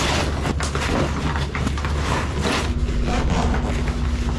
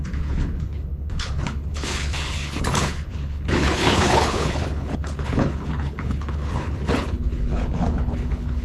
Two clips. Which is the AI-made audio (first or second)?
second